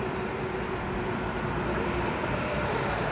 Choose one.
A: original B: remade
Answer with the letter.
A